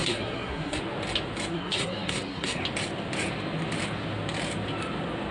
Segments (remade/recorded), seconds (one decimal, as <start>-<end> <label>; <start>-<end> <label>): 0.0-0.8 remade; 0.8-1.5 recorded; 1.5-2.6 remade; 2.6-5.3 recorded